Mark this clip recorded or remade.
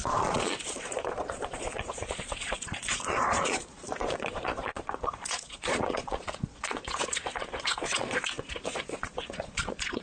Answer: remade